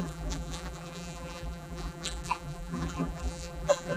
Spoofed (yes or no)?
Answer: yes